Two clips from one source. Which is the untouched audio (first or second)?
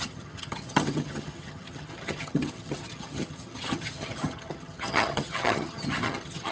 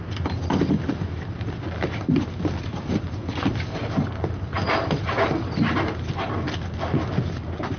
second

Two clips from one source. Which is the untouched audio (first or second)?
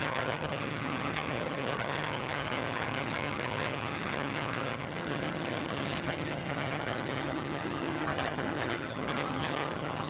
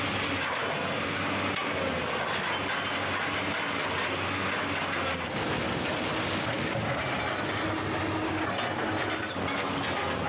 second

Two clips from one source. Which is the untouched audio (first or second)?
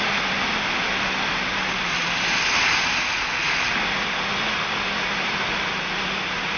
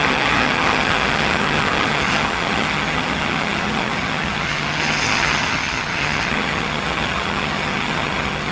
first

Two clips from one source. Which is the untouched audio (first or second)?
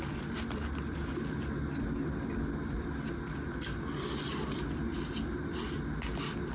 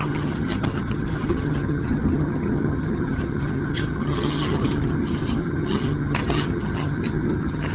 first